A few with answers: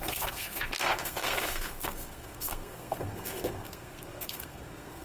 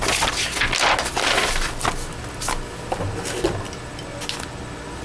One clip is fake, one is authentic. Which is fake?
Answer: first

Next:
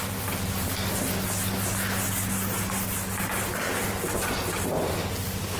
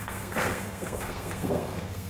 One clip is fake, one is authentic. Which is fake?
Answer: second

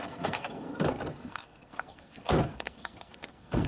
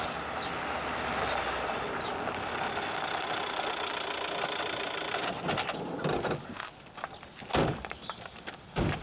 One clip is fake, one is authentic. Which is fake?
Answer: first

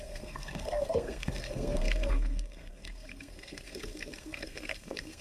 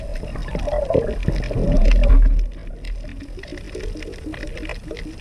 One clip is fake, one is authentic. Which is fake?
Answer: first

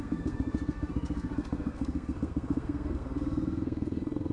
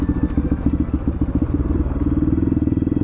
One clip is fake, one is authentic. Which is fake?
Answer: first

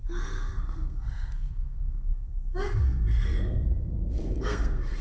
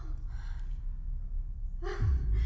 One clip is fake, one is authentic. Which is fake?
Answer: first